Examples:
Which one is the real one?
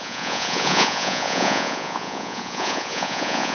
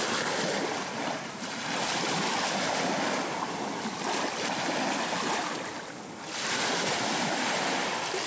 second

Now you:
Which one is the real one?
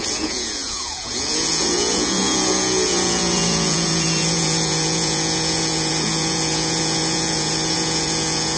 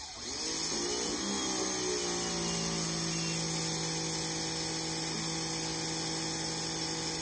second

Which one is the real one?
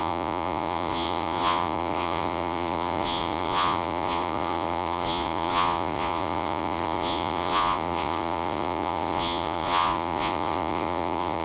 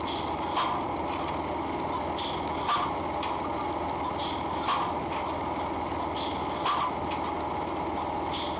second